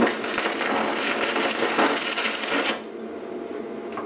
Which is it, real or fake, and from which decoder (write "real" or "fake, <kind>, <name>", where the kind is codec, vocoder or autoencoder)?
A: real